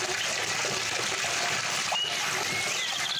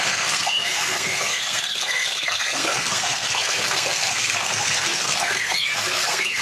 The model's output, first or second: second